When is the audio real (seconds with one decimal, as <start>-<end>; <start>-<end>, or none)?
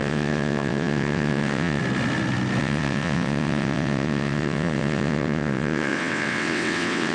1.8-2.6